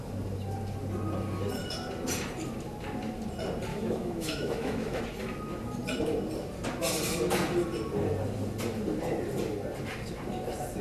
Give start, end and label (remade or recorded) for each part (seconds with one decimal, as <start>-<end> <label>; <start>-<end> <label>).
0.0-3.7 recorded; 3.7-5.0 remade; 5.0-10.8 recorded